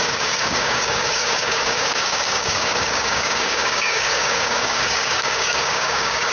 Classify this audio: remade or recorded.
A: remade